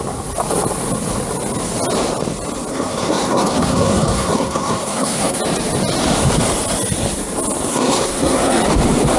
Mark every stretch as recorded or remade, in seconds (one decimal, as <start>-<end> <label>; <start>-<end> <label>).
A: 0.0-2.7 recorded; 2.7-5.4 remade; 5.4-7.7 recorded; 7.7-8.6 remade; 8.6-9.2 recorded